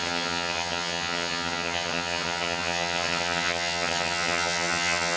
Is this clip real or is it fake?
fake